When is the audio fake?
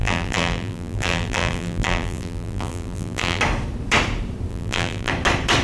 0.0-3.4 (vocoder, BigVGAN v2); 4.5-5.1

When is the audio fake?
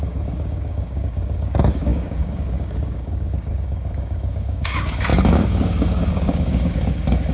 0.0-7.3 (codec, DAC)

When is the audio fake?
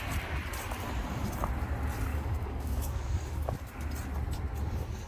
2.1-3.5 (codec, DAC)